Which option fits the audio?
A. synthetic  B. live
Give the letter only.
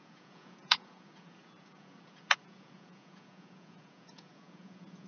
A